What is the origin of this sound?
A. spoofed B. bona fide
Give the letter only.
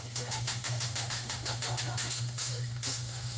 A